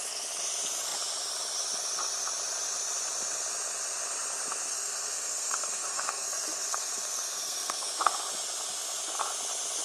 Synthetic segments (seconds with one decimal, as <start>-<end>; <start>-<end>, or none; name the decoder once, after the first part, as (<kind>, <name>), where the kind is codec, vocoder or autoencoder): 4.7-7.9 (codec, SNAC)